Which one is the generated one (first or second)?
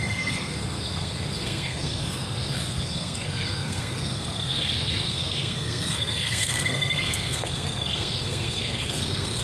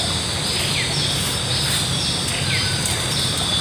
first